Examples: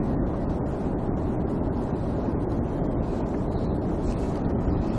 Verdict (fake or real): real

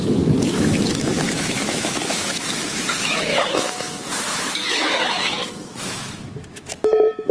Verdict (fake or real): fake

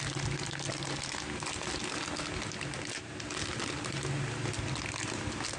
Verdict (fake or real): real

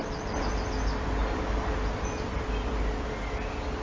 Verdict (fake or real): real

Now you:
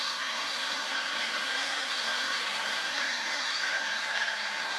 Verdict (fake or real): fake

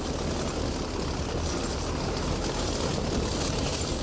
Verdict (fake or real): real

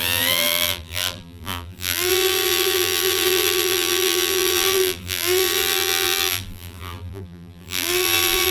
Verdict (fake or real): fake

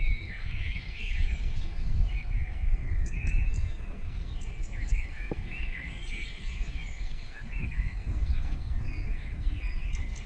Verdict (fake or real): fake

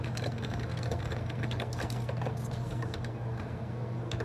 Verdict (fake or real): fake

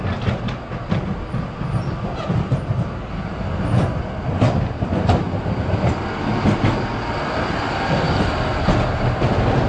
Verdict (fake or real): real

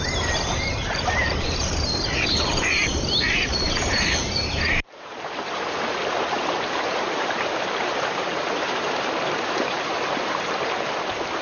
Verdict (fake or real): fake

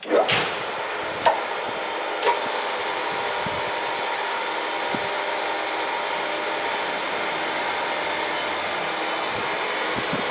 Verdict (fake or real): real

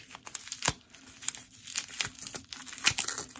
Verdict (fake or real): real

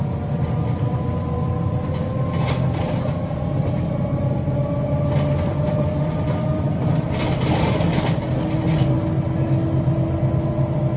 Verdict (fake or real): real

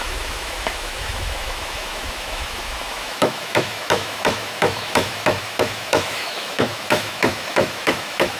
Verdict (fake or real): fake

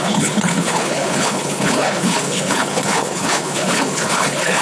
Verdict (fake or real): fake